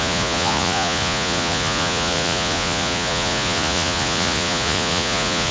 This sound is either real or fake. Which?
fake